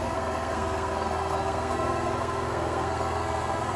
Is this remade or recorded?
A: remade